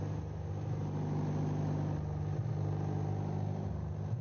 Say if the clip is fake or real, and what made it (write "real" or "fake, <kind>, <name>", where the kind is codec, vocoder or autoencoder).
real